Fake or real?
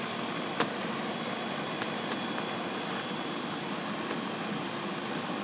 real